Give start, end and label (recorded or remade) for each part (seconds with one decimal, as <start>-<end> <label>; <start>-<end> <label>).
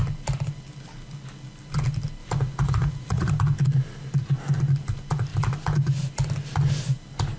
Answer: 0.0-2.2 recorded; 2.2-3.3 remade; 3.3-7.4 recorded